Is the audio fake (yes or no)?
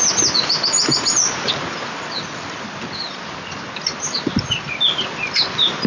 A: no